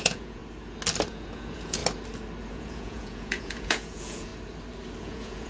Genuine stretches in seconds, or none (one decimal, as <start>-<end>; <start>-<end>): 0.4-1.1; 1.8-2.5; 4.3-5.0